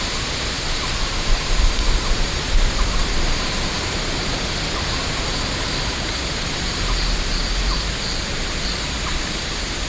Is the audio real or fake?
real